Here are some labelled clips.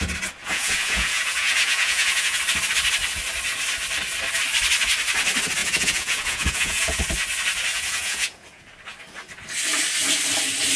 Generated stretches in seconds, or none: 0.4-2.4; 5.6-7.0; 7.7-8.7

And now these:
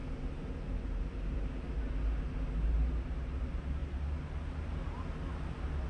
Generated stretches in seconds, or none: none

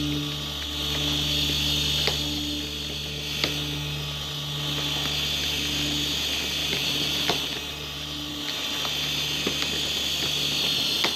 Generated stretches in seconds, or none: 6.6-8.3

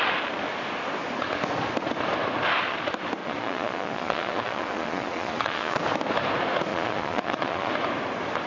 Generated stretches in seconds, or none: 3.2-5.8; 6.7-7.7